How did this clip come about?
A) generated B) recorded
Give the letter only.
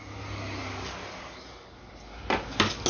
B